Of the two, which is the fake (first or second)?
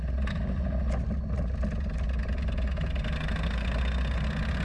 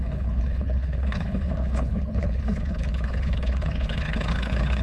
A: second